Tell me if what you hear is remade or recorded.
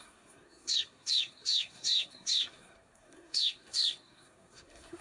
remade